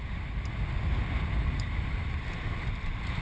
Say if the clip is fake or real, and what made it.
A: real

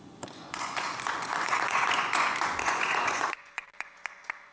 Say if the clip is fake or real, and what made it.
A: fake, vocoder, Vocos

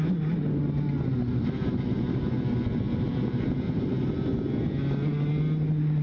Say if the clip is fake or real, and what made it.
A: real